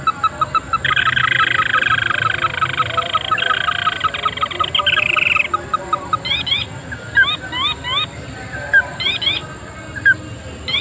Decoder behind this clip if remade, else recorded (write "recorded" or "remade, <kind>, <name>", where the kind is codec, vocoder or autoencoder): recorded